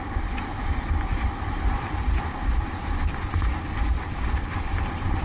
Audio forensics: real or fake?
fake